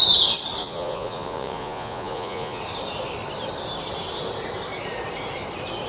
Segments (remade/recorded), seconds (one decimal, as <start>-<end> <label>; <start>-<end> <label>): 0.0-0.6 recorded; 0.6-2.6 remade; 2.6-5.9 recorded